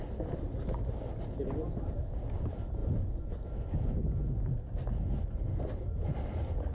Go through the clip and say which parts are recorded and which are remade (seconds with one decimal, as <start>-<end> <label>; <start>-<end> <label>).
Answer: 0.0-6.7 recorded

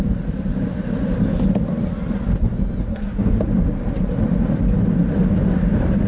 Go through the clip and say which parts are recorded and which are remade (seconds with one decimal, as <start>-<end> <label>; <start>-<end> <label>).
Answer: 0.0-2.9 recorded; 2.9-3.4 remade; 3.4-6.1 recorded

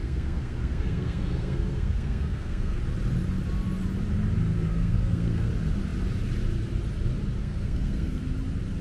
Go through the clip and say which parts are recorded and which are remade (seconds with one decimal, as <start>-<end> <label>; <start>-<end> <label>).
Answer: 0.0-2.8 remade; 2.8-4.7 recorded; 4.7-5.5 remade; 5.5-7.4 recorded; 7.4-8.2 remade; 8.2-8.8 recorded

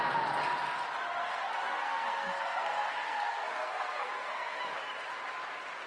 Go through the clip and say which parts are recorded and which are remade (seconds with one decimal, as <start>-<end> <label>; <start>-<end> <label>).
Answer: 0.0-1.2 recorded; 1.2-4.6 remade; 4.6-5.9 recorded

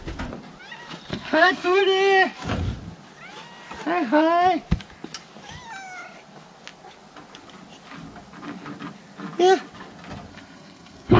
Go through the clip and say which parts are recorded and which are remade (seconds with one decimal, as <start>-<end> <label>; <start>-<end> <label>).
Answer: 0.0-1.1 recorded; 1.1-1.8 remade; 1.8-10.3 recorded; 10.3-11.2 remade

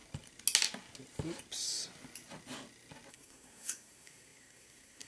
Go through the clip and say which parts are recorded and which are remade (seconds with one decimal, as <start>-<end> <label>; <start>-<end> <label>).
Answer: 0.0-3.1 recorded; 3.1-5.1 remade

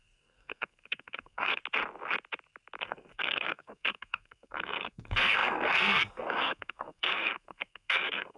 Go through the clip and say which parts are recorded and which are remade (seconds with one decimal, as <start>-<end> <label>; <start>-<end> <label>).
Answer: 0.0-1.6 remade; 1.6-2.8 recorded; 2.8-8.4 remade